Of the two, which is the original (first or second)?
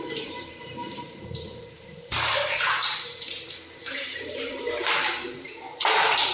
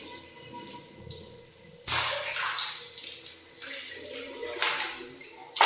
second